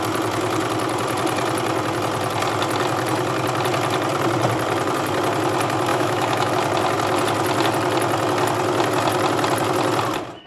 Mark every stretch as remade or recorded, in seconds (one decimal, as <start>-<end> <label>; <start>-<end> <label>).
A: 0.0-5.9 recorded; 5.9-6.5 remade; 6.5-10.5 recorded